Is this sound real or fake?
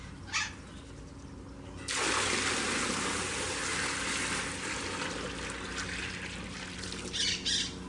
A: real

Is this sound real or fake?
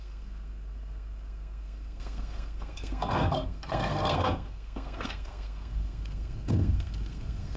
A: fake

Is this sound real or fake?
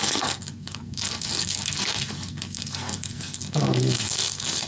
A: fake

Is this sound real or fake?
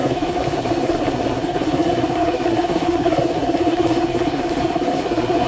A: fake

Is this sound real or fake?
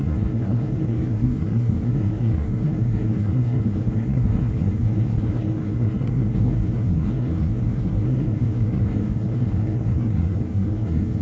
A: fake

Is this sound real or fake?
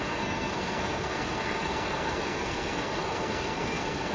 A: fake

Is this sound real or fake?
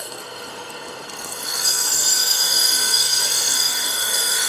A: fake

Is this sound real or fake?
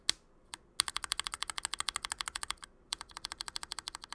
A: real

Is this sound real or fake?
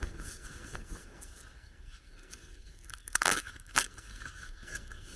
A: fake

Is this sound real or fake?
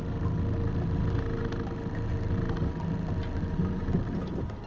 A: real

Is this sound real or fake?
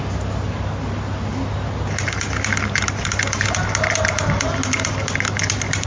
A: real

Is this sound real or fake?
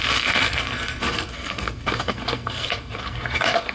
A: fake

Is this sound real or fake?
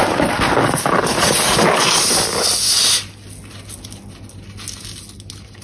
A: real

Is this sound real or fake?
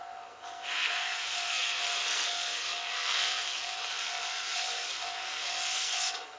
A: fake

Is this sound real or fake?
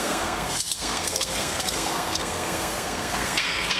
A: fake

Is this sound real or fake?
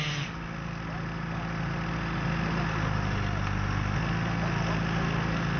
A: real